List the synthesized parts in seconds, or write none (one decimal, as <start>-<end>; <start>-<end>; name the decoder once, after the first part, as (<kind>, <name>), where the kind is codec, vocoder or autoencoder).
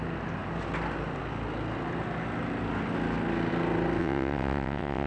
4.0-5.1 (vocoder, WaveNeXt)